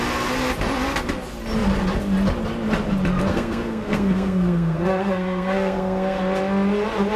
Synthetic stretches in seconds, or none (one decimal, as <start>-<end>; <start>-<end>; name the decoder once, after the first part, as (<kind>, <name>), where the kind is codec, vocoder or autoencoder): 3.3-6.2 (codec, SNAC)